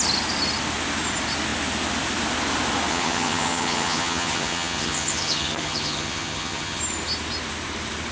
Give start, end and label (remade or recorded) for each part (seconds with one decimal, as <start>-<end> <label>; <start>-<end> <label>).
0.0-2.9 recorded; 2.9-6.8 remade; 6.8-8.1 recorded